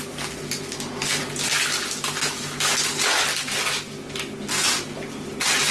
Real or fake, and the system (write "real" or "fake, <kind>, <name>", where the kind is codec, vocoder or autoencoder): real